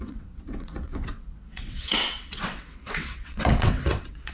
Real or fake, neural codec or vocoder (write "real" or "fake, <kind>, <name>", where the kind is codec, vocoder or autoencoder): fake, vocoder, WaveNeXt